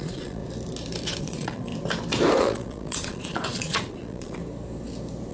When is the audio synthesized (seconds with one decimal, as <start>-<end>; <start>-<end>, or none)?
0.0-0.4; 1.2-1.7; 2.4-4.4